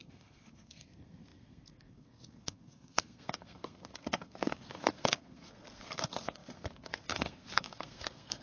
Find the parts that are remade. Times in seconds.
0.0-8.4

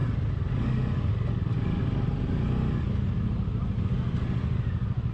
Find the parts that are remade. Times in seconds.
none

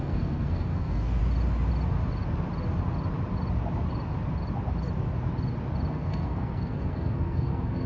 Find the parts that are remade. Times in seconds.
0.0-1.2; 5.9-7.9

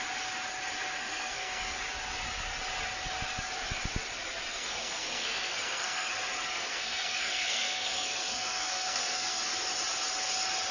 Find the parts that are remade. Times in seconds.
1.0-1.8; 4.5-6.1; 6.7-9.5

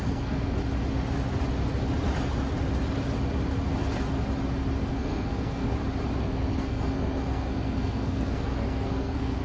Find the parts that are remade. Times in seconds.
0.0-0.6; 4.9-5.6; 6.2-9.4

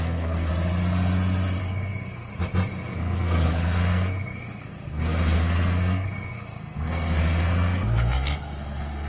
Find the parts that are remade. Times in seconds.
0.0-0.5; 1.6-2.3; 2.9-9.1

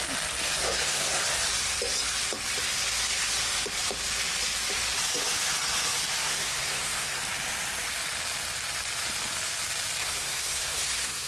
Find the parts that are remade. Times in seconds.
0.6-1.2; 6.2-7.2; 10.0-11.3